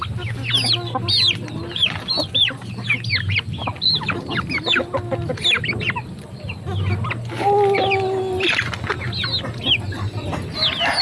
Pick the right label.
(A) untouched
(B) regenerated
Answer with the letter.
A